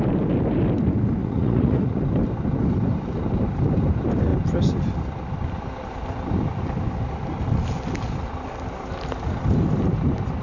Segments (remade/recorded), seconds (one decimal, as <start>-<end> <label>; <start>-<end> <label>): 0.0-1.2 recorded; 1.2-2.0 remade; 2.0-10.4 recorded